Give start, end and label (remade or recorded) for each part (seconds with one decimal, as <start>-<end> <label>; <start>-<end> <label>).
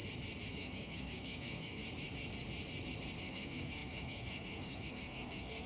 0.0-0.5 recorded; 0.5-1.8 remade; 1.8-3.2 recorded; 3.2-5.7 remade